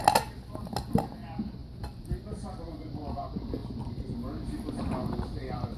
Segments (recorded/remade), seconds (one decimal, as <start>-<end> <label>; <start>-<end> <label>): 0.0-1.6 recorded; 1.6-2.7 remade; 2.7-3.6 recorded; 3.6-4.7 remade; 4.7-5.8 recorded